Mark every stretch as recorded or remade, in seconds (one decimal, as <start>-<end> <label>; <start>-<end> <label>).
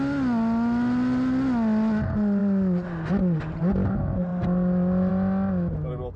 0.0-6.2 recorded